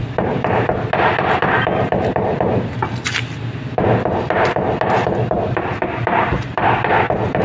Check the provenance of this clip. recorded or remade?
recorded